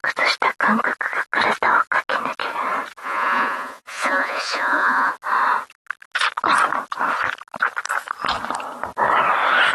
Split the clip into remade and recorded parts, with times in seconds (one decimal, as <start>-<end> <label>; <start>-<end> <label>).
0.0-3.0 recorded; 3.0-5.1 remade; 5.1-9.7 recorded